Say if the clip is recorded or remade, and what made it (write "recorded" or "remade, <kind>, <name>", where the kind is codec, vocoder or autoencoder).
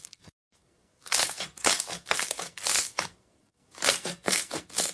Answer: remade, codec, SNAC